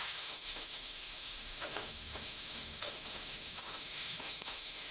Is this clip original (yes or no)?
no